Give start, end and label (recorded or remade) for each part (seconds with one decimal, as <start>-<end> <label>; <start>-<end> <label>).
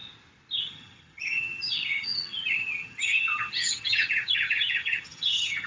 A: 0.0-0.6 recorded; 0.6-5.7 remade